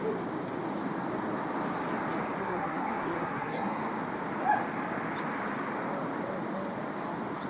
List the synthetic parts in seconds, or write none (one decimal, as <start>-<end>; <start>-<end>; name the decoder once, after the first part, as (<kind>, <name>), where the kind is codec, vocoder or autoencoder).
2.4-3.8 (codec, SNAC)